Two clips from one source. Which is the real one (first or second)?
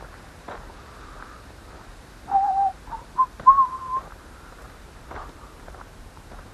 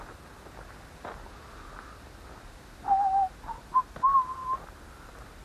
second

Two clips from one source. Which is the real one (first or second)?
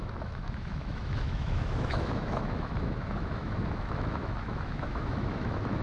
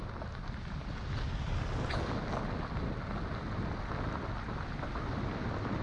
second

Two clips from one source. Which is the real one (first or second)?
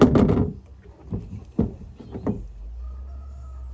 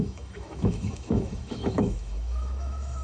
first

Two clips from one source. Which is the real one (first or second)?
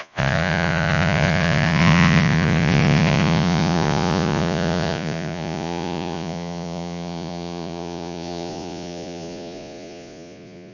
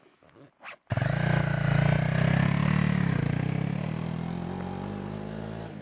second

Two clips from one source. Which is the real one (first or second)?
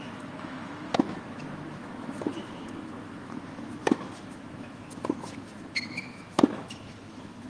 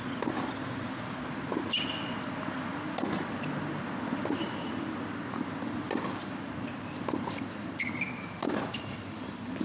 second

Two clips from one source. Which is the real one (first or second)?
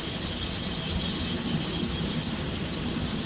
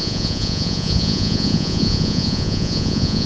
first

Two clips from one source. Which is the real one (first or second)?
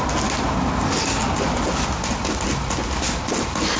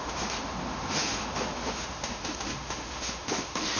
first